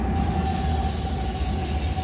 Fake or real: real